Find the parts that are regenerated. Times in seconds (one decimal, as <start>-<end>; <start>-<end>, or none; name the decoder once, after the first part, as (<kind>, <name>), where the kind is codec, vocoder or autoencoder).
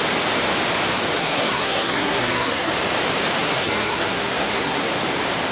1.2-2.7 (codec, SNAC); 3.4-4.9